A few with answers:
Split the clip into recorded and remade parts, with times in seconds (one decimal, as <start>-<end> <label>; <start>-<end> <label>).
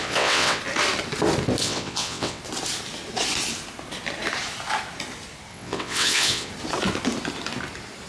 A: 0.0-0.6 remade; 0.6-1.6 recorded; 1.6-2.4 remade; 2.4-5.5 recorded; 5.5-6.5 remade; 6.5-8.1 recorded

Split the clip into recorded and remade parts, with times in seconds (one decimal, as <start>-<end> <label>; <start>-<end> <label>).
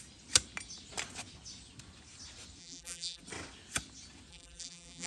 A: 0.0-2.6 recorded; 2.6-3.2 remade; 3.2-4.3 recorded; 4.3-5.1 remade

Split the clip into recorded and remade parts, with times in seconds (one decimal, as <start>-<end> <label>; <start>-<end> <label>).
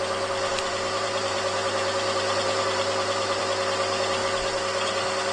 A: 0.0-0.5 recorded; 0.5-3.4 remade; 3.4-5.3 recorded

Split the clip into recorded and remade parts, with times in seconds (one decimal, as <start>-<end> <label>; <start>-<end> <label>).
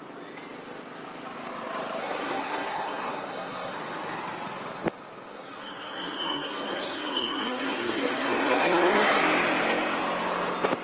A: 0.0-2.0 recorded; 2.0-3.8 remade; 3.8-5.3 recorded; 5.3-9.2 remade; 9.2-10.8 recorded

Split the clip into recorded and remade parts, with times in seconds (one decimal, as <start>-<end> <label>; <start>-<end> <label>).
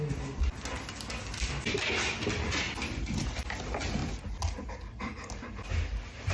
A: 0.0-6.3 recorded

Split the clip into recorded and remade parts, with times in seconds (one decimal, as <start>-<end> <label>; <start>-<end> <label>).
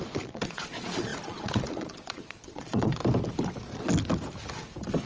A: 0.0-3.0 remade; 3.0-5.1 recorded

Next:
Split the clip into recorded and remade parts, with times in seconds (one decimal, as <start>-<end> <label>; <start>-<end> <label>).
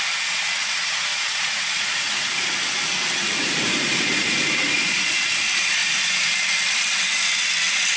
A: 0.0-1.1 recorded; 1.1-2.3 remade; 2.3-3.4 recorded; 3.4-5.1 remade; 5.1-5.8 recorded; 5.8-6.4 remade; 6.4-8.0 recorded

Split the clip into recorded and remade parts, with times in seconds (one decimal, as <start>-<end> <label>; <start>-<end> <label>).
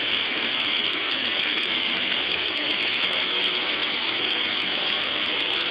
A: 0.0-5.7 remade